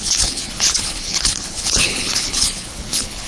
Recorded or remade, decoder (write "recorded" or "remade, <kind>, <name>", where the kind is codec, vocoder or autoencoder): remade, codec, HILCodec